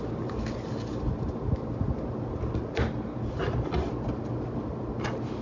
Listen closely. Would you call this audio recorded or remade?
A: recorded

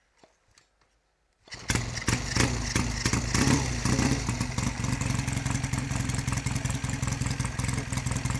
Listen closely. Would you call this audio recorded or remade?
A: recorded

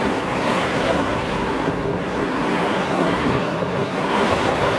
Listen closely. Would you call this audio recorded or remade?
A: remade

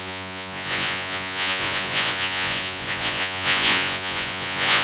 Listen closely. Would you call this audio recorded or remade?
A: remade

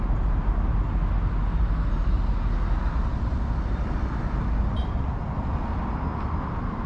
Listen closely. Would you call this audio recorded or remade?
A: recorded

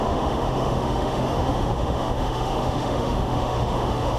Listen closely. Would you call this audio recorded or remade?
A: remade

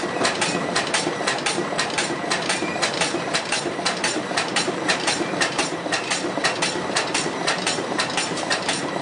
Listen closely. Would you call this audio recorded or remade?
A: remade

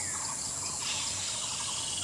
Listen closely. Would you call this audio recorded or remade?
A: recorded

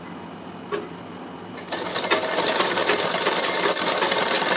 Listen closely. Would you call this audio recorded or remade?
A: recorded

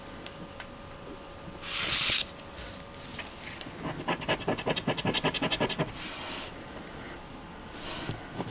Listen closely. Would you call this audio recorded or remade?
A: recorded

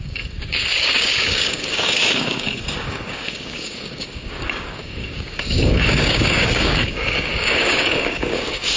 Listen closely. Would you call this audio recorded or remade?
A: remade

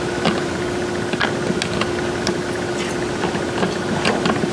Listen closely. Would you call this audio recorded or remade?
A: recorded